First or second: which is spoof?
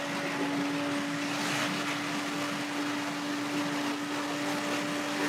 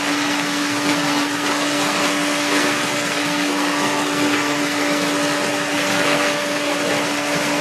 second